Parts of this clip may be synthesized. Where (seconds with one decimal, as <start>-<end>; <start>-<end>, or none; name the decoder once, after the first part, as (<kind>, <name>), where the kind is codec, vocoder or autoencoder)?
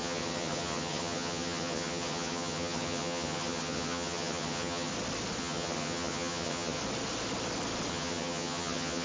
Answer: 0.0-4.9 (vocoder, HiFi-GAN); 5.4-6.8; 7.9-9.0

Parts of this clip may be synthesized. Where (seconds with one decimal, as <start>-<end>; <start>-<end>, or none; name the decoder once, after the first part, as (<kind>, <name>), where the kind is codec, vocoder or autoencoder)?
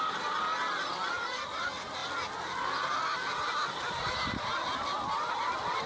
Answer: none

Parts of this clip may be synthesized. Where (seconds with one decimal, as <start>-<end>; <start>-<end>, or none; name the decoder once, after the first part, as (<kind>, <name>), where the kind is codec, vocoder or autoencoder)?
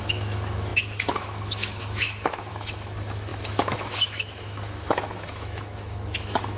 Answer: 0.0-6.6 (autoencoder, DAC-VAE)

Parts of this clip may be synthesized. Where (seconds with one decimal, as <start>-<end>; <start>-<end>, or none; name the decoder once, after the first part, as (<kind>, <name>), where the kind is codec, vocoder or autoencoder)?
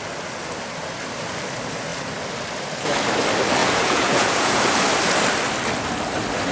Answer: 3.6-4.6 (vocoder, Vocos)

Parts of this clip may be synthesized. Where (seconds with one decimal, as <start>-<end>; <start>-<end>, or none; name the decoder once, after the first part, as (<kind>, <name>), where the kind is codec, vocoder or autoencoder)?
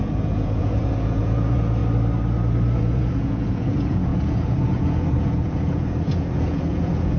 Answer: 0.0-1.8 (vocoder, Vocos); 2.8-7.2